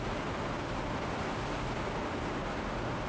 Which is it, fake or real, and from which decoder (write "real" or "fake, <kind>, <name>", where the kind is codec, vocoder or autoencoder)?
real